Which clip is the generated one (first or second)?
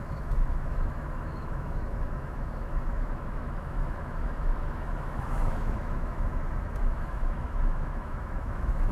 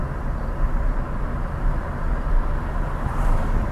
first